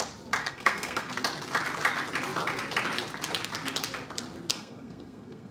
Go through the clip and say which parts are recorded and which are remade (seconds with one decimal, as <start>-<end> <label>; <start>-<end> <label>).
0.0-0.4 recorded; 0.4-1.1 remade; 1.1-4.5 recorded; 4.5-5.5 remade